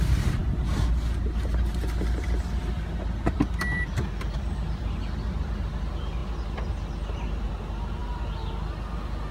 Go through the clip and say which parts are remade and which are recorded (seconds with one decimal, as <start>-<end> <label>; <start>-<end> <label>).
0.0-9.3 recorded